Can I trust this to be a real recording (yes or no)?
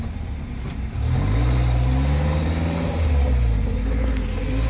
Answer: yes